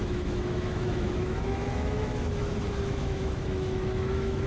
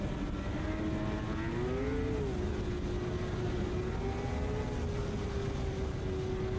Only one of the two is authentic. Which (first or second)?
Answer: second